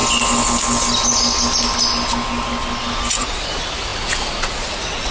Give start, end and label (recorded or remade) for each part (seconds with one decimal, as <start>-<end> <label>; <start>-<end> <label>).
0.0-3.1 recorded; 3.1-5.1 remade